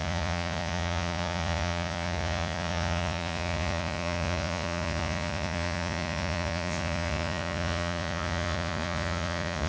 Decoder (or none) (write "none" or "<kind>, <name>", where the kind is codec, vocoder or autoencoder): vocoder, Vocos